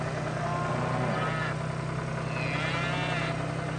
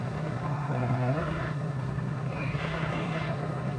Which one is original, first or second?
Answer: first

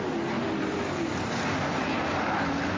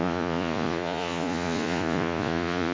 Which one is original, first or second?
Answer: first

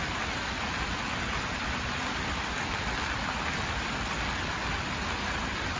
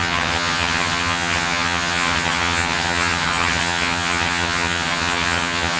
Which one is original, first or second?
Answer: first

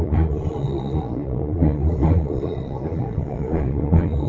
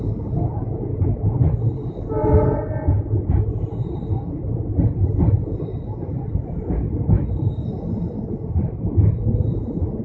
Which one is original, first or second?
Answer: second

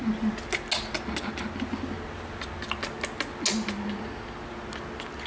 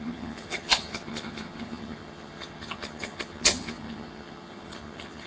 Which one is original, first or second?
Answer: first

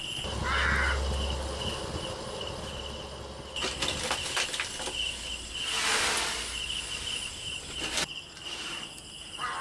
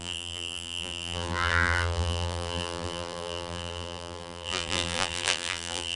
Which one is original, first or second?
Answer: first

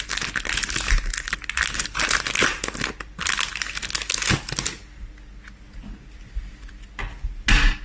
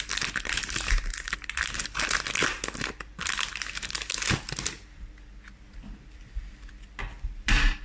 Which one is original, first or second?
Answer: first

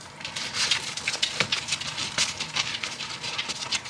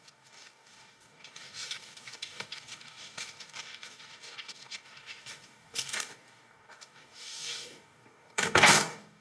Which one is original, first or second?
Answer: first